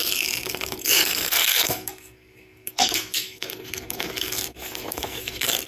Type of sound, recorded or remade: remade